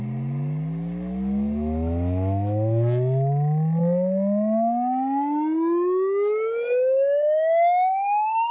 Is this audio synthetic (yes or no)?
no